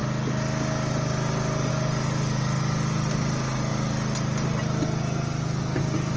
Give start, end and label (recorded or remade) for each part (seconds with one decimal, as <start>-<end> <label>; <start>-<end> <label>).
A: 0.0-6.2 recorded